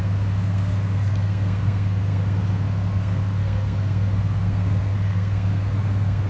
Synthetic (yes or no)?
yes